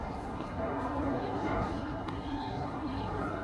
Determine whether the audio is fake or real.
fake